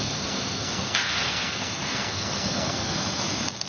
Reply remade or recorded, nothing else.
remade